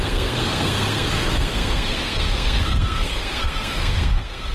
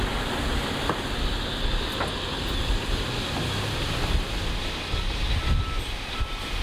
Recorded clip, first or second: second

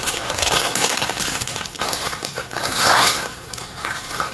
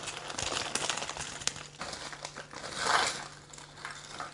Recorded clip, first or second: second